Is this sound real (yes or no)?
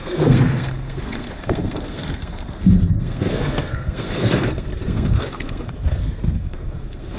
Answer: no